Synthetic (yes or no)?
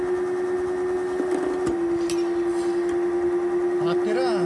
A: no